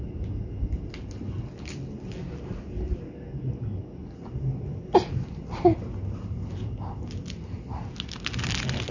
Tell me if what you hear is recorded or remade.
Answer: recorded